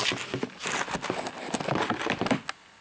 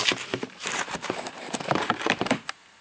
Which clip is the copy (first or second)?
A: second